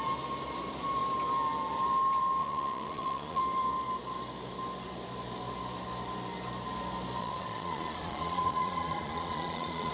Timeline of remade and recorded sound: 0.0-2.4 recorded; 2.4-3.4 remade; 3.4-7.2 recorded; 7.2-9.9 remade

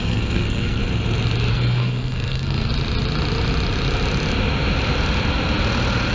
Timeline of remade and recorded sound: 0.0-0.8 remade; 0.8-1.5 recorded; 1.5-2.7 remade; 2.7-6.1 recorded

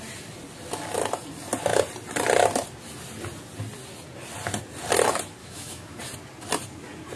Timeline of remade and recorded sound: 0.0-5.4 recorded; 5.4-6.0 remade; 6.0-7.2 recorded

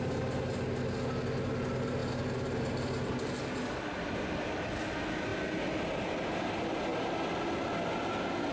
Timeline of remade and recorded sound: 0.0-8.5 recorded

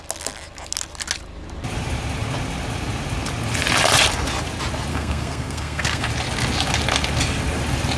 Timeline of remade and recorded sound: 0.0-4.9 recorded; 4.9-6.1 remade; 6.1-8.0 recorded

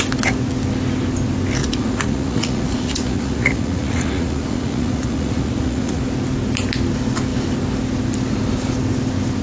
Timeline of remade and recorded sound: 0.0-1.6 recorded; 1.6-6.0 remade; 6.0-9.4 recorded

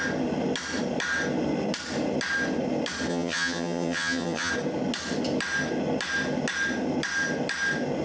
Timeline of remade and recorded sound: 0.0-3.1 recorded; 3.1-4.5 remade; 4.5-8.0 recorded

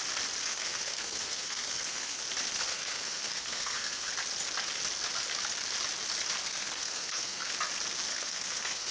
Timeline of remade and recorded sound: 0.0-0.4 recorded; 0.4-2.2 remade; 2.2-2.7 recorded; 2.7-4.1 remade; 4.1-6.4 recorded; 6.4-7.5 remade; 7.5-8.1 recorded; 8.1-8.9 remade